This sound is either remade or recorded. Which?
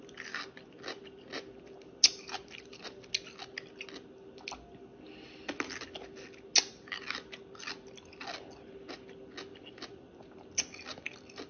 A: recorded